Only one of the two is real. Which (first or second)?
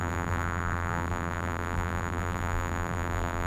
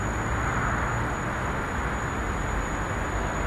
second